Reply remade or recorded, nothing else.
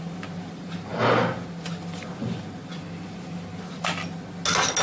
recorded